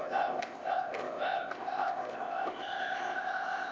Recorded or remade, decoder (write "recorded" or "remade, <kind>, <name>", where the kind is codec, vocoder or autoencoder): remade, codec, ZipCodec